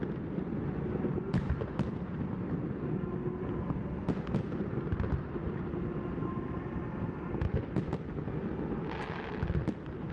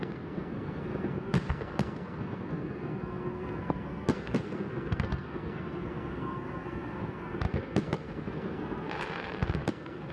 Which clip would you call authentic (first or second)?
first